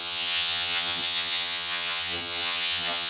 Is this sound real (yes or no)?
no